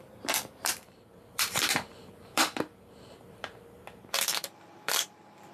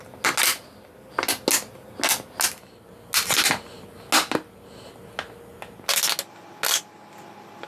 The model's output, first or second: first